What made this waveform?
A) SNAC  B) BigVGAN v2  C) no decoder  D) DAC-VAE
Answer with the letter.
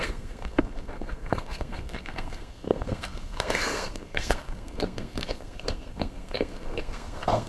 A